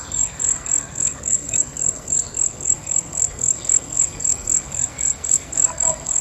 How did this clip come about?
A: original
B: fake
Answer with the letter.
B